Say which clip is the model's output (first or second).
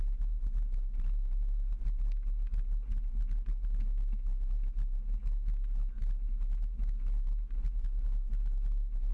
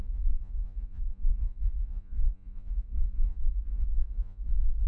second